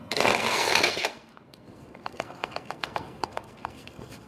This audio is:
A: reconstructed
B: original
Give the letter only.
A